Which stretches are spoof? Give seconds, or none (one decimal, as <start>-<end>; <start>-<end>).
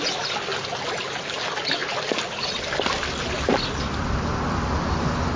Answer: none